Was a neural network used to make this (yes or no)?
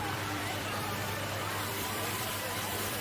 yes